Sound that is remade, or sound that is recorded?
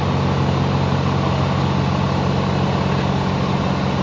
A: recorded